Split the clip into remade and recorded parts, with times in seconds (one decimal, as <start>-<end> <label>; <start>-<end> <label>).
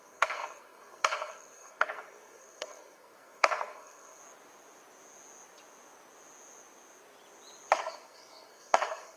0.0-4.2 remade; 4.2-7.8 recorded; 7.8-9.2 remade